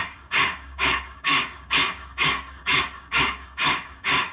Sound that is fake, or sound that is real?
fake